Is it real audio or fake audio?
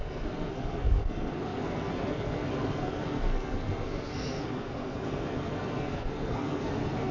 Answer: fake